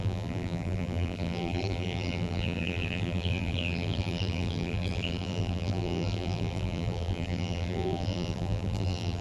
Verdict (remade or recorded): remade